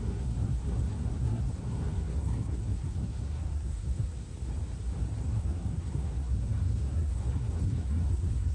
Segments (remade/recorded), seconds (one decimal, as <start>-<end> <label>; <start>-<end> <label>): 0.0-4.1 remade; 4.1-5.2 recorded; 5.2-8.5 remade